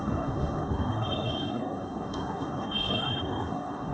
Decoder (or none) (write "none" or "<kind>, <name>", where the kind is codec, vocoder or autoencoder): codec, SNAC